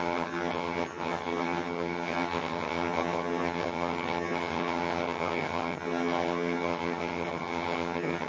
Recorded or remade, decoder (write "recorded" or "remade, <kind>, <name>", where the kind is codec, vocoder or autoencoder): remade, vocoder, HiFi-GAN